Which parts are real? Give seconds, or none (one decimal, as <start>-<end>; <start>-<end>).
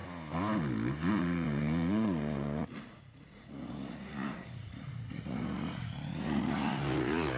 0.0-1.1